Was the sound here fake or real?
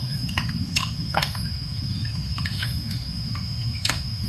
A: fake